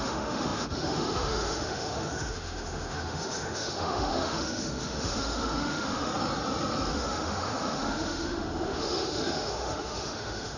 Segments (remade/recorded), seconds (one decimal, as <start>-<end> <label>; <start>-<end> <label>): 0.0-6.1 remade; 6.1-6.9 recorded; 6.9-10.6 remade